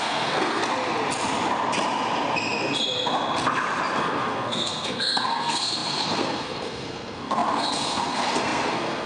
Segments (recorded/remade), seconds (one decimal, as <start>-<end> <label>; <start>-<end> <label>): 0.0-0.6 remade; 0.6-4.0 recorded; 4.0-9.1 remade